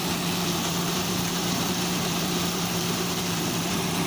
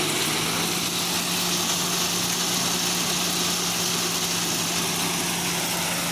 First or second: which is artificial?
first